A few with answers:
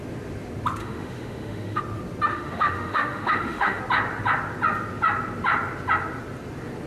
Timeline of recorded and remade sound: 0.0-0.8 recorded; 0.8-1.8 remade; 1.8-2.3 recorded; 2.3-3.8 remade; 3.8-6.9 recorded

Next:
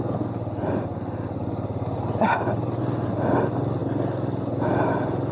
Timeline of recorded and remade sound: 0.0-5.3 recorded

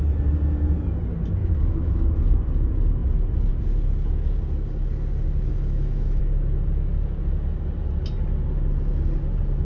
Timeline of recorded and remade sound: 0.0-1.4 recorded; 1.4-2.1 remade; 2.1-5.5 recorded; 5.5-6.2 remade; 6.2-9.6 recorded